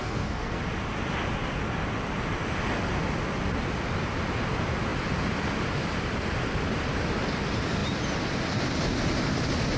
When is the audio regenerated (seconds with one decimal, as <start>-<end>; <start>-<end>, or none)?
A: 0.0-0.6